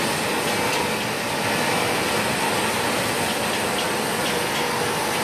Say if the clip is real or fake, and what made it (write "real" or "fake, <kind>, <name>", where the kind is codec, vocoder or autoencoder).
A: real